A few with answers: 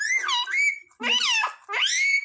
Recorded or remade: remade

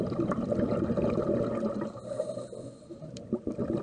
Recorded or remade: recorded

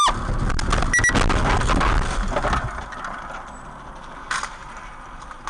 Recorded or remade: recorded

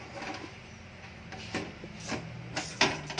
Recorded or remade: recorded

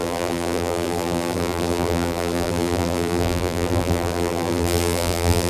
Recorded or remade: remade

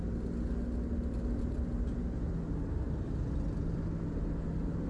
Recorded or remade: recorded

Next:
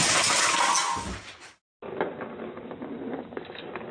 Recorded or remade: recorded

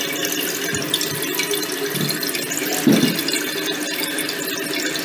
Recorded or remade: recorded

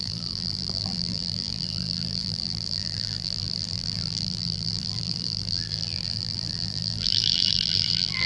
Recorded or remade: remade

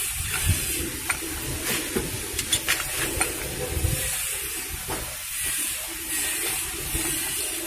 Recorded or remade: remade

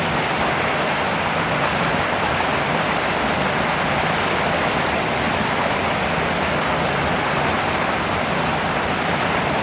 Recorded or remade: recorded